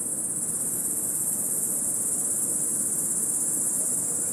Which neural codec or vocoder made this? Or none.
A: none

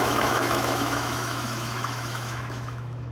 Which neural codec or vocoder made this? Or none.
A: autoencoder, DAC-VAE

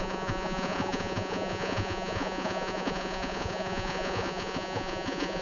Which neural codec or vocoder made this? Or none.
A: vocoder, Vocos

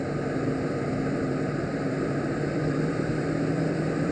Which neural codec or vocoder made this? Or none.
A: vocoder, BigVGAN v2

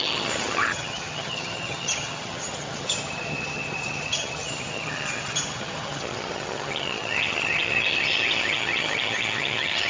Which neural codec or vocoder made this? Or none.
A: vocoder, HiFi-GAN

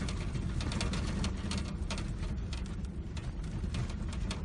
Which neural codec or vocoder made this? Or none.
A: none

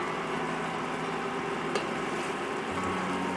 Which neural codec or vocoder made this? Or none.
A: none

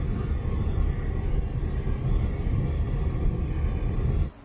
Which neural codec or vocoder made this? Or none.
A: none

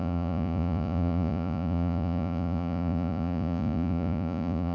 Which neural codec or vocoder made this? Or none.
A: vocoder, Vocos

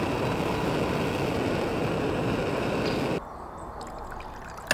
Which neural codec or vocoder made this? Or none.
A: none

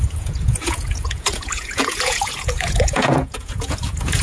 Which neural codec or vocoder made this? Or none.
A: vocoder, Vocos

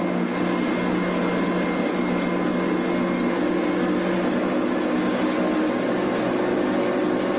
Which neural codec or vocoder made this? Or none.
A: none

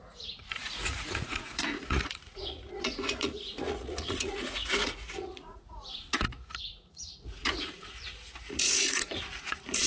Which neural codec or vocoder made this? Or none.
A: vocoder, Vocos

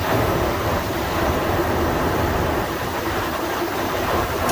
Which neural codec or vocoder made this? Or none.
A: vocoder, BigVGAN v2